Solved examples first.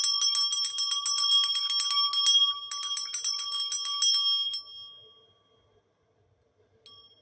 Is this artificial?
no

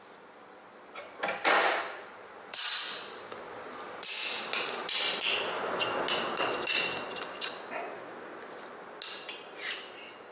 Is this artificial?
no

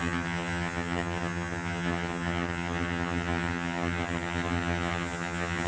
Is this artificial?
yes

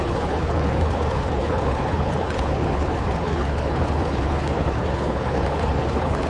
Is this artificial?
yes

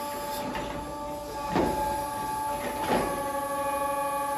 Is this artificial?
no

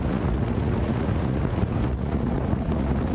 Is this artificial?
yes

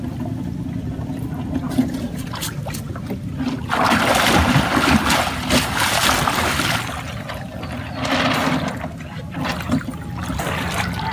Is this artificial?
no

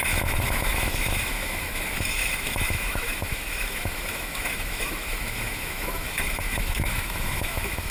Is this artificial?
yes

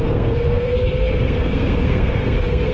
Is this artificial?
yes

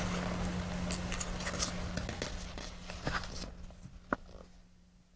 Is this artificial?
no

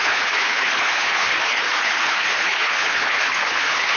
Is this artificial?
yes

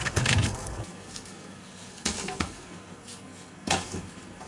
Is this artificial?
yes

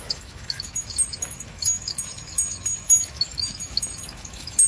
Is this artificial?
yes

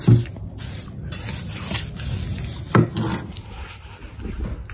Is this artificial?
no